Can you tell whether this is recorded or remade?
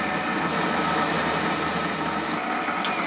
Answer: recorded